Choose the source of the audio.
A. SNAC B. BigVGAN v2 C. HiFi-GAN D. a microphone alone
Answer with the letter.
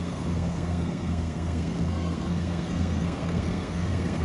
A